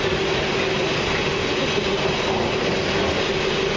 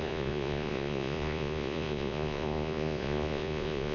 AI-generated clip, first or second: second